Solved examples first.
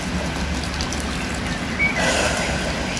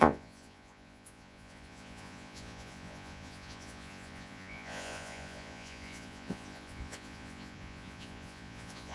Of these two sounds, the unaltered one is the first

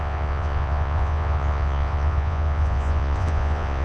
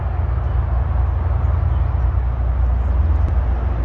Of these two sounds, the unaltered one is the second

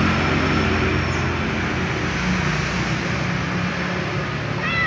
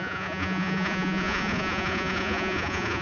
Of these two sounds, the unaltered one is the first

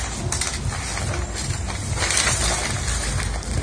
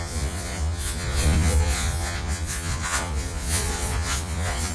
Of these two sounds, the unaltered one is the first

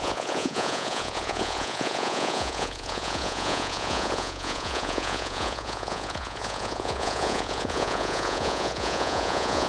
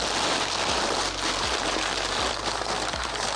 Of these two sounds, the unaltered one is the second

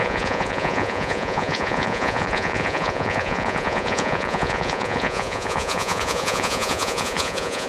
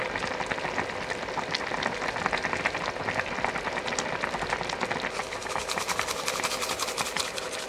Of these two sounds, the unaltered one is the second